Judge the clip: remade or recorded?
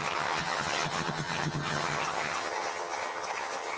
remade